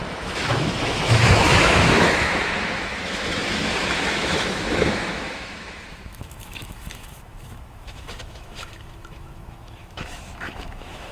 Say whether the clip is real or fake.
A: fake